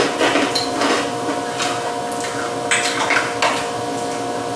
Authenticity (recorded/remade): recorded